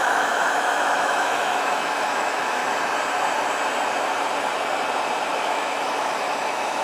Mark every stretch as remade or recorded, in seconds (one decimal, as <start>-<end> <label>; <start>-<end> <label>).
0.0-2.6 remade; 2.6-5.3 recorded; 5.3-6.8 remade